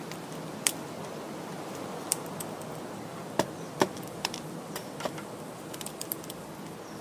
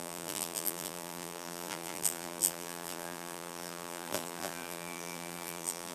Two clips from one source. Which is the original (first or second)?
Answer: first